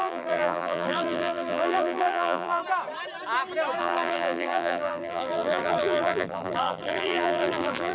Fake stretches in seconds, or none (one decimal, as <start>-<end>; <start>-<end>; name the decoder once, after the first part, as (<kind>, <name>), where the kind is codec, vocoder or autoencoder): 0.0-2.6 (vocoder, BigVGAN v2); 3.8-7.9